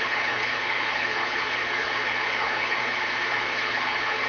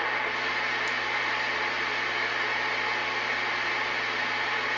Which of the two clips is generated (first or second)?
first